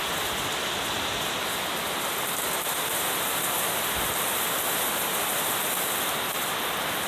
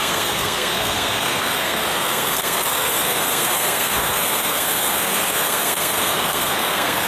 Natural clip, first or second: first